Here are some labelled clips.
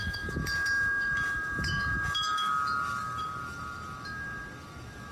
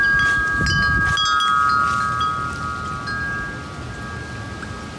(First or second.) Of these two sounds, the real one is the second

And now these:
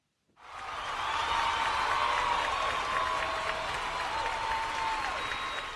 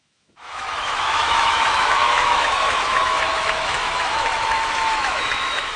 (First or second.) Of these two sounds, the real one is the first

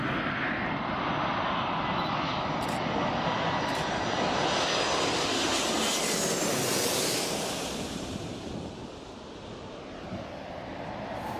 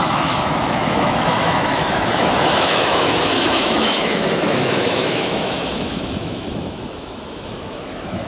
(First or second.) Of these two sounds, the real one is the first